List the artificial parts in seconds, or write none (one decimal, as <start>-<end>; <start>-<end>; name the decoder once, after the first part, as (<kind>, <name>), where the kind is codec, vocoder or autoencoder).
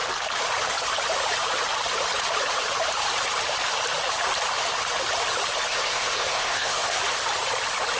5.7-7.0 (codec, ZipCodec)